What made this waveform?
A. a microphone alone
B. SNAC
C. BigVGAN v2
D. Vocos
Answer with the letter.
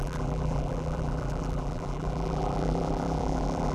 C